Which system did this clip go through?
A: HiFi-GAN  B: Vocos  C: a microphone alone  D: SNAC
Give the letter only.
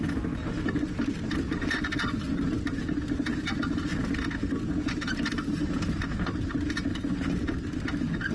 C